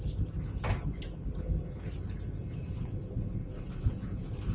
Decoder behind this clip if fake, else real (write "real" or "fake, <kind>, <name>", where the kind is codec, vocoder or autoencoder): real